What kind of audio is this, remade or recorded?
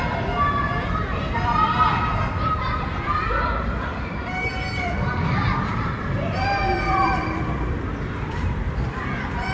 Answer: remade